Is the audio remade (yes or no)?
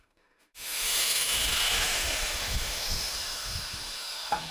yes